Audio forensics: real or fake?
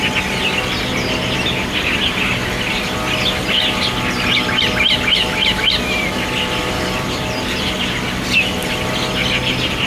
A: real